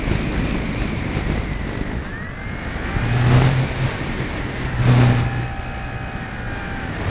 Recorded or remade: recorded